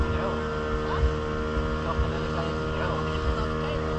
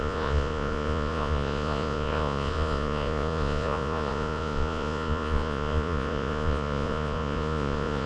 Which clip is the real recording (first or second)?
first